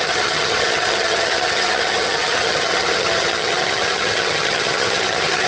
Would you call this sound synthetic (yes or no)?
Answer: yes